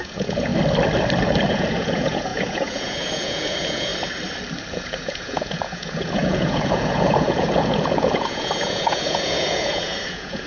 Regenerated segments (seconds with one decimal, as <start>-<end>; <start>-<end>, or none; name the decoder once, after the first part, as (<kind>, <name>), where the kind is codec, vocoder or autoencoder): 0.0-0.5 (vocoder, Vocos); 1.5-3.9; 4.7-10.5